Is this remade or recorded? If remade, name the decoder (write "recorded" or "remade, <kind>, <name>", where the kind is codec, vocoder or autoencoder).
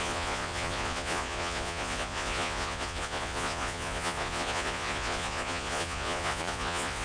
remade, vocoder, Vocos